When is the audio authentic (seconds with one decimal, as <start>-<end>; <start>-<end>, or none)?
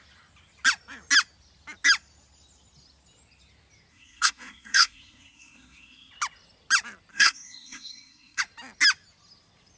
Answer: 0.0-3.9; 6.1-7.1; 8.4-9.8